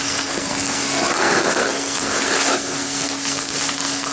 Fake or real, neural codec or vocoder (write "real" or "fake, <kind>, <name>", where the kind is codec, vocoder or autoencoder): fake, codec, SNAC